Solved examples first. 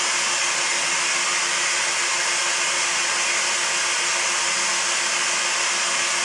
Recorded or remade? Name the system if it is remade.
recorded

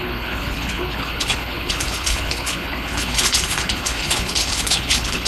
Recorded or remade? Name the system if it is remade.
remade, codec, HILCodec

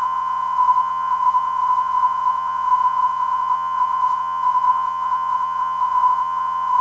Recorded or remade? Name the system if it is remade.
remade, vocoder, WaveNeXt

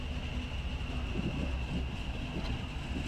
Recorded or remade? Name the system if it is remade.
recorded